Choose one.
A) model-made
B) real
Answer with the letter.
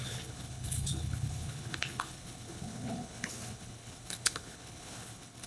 A